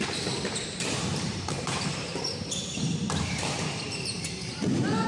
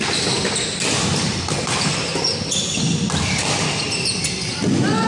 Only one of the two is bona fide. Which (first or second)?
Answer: second